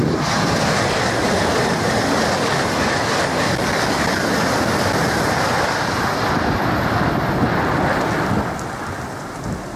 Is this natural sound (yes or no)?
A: yes